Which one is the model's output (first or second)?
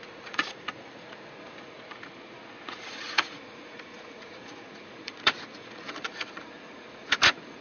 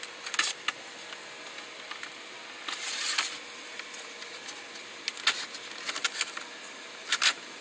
first